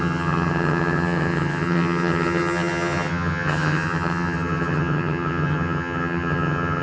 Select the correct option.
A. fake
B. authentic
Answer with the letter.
A